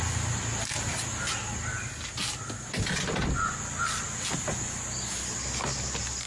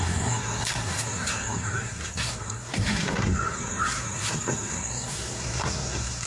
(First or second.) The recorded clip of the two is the first